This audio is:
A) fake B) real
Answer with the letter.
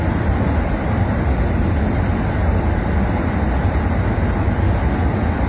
B